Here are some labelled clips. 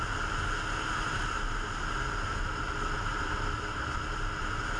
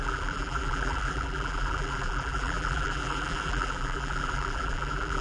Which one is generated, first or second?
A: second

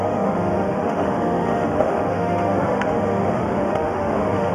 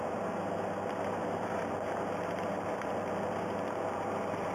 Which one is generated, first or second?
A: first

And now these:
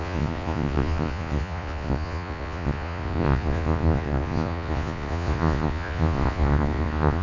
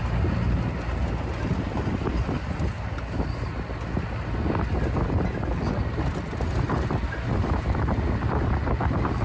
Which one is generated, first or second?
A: first